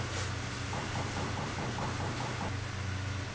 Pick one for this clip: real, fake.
real